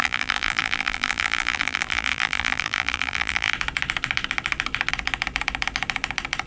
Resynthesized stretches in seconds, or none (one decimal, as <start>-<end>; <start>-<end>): 0.0-3.5

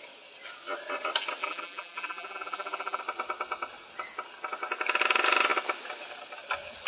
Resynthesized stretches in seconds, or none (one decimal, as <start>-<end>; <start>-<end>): 1.4-3.0